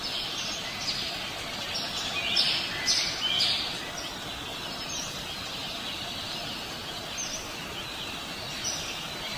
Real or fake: real